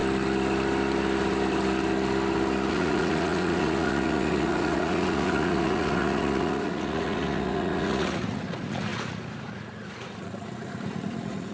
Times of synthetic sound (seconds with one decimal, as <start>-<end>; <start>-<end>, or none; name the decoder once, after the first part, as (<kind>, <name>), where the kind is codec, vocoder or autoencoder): 2.7-11.5 (vocoder, Vocos)

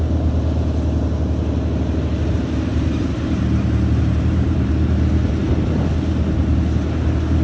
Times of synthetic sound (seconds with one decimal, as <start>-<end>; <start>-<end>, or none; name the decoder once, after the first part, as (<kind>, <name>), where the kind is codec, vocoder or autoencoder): 2.7-4.7 (vocoder, BigVGAN v2)

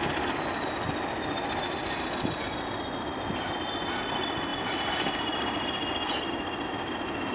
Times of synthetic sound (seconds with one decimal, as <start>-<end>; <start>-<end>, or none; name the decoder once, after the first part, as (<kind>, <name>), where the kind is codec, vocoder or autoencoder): none